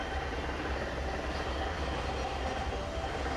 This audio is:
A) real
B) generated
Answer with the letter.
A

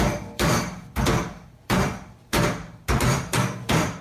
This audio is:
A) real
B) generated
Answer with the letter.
B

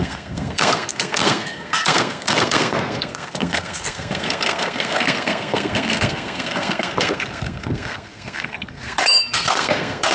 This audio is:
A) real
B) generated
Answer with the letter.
B